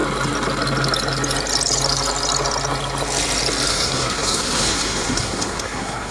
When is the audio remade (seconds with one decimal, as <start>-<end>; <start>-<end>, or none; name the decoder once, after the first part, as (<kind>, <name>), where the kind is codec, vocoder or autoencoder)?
3.7-6.1 (codec, SNAC)